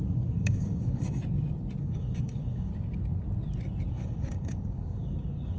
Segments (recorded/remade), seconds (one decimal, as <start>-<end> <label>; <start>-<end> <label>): 0.0-1.2 remade; 1.2-1.8 recorded; 1.8-2.7 remade; 2.7-3.9 recorded; 3.9-5.6 remade